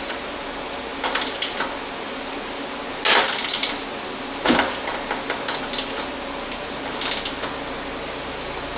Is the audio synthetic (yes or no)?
no